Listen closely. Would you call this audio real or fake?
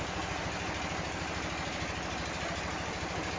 real